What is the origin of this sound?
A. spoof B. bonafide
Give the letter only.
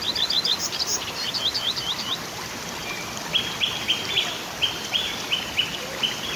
A